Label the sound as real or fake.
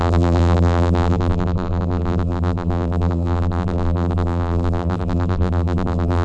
fake